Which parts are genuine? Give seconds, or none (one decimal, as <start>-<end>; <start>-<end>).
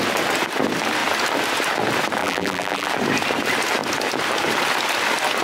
0.0-2.2; 2.9-5.4